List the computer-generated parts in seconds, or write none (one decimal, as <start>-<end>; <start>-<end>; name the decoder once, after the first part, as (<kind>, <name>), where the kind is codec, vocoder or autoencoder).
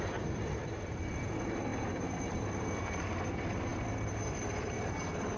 0.0-1.7 (vocoder, BigVGAN v2); 2.3-5.4